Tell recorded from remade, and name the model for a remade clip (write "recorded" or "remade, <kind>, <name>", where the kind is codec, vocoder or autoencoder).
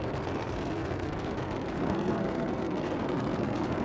remade, codec, SNAC